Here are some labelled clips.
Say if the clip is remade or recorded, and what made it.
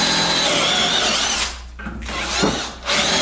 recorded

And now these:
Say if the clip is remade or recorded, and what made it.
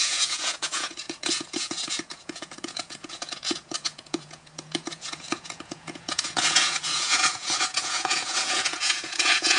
remade, vocoder, Vocos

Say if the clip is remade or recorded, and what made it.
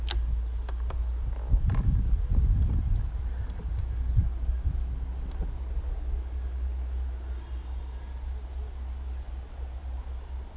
recorded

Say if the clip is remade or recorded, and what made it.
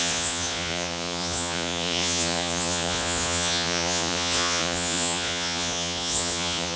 remade, vocoder, Vocos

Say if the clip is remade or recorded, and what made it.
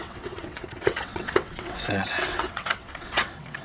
remade, vocoder, WaveNeXt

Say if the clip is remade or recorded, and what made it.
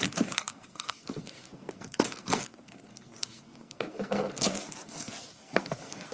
remade, codec, SNAC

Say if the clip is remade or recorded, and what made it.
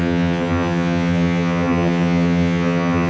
remade, vocoder, HiFi-GAN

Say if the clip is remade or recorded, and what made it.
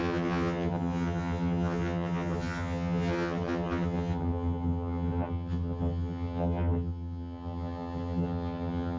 remade, vocoder, HiFi-GAN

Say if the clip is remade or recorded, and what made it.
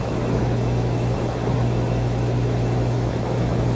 remade, autoencoder, DAC-VAE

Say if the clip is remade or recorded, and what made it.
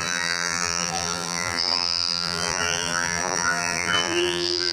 remade, vocoder, BigVGAN v2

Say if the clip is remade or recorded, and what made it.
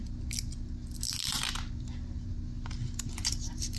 recorded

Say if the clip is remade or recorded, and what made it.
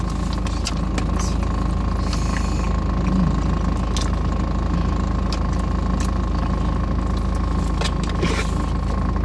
recorded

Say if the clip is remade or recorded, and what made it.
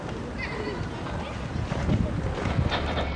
remade, vocoder, BigVGAN v2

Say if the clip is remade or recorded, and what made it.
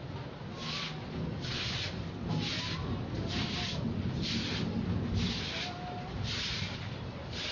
recorded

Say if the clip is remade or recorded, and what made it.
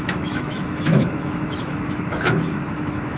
remade, autoencoder, DAC-VAE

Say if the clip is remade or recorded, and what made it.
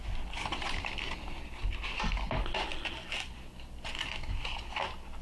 recorded